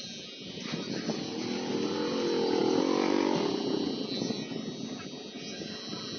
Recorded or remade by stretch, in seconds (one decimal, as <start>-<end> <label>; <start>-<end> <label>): 0.0-6.2 recorded